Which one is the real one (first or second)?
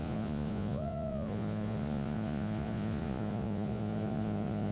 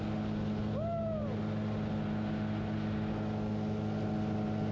second